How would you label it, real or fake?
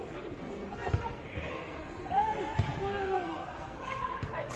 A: fake